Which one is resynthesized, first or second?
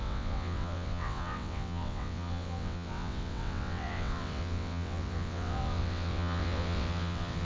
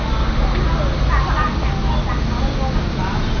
first